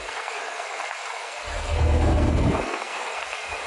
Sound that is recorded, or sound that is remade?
remade